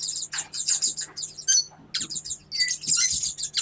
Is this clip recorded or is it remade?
recorded